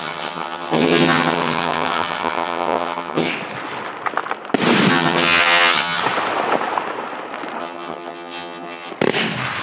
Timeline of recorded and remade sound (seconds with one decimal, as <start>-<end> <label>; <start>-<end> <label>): 0.0-3.3 remade; 3.3-4.9 recorded; 4.9-6.0 remade; 6.0-7.6 recorded; 7.6-8.9 remade; 8.9-9.6 recorded

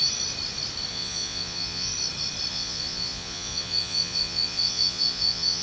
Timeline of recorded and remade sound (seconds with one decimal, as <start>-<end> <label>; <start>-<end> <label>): 0.0-0.9 recorded; 0.9-1.9 remade; 1.9-2.5 recorded; 2.5-5.6 remade

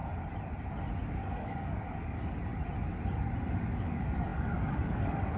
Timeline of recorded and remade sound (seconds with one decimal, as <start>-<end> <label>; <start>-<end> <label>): 0.0-1.1 recorded; 1.1-2.5 remade; 2.5-3.5 recorded; 3.5-5.4 remade

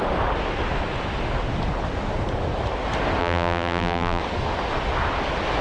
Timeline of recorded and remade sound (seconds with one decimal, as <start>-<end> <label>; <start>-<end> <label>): 0.0-3.2 recorded; 3.2-4.2 remade; 4.2-5.6 recorded

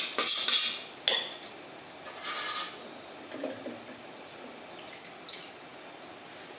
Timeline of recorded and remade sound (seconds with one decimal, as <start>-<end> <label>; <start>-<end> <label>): 0.0-6.6 recorded

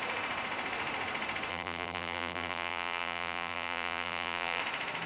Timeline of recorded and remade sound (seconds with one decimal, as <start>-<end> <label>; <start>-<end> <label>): 0.0-1.5 recorded; 1.5-4.6 remade; 4.6-5.1 recorded

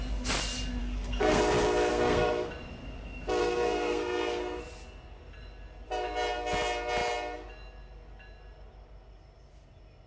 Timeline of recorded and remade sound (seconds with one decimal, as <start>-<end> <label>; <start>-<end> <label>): 0.0-0.8 recorded; 0.8-1.4 remade; 1.4-1.9 recorded; 1.9-2.5 remade; 2.5-3.4 recorded; 3.4-4.6 remade; 4.6-10.1 recorded